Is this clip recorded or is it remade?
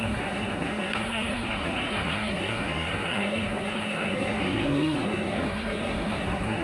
remade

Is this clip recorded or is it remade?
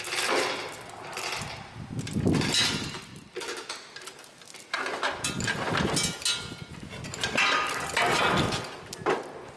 recorded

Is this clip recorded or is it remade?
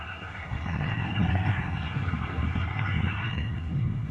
remade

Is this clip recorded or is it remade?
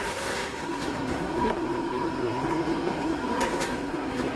remade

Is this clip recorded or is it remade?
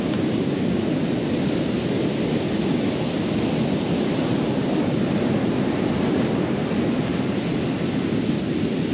recorded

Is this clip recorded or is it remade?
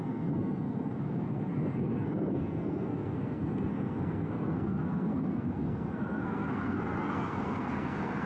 remade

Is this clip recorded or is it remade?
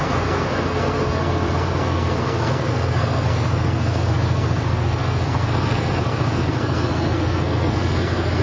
remade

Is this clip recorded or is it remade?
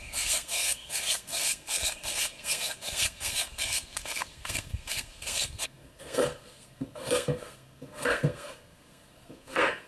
remade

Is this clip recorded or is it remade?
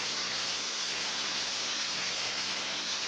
remade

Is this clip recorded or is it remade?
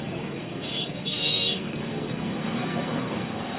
remade